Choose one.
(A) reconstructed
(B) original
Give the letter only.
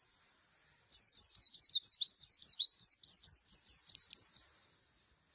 B